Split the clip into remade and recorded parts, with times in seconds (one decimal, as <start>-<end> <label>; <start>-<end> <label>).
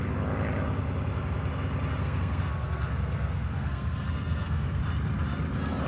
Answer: 0.0-2.0 recorded; 2.0-4.8 remade; 4.8-5.9 recorded